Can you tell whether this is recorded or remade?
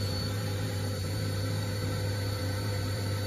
remade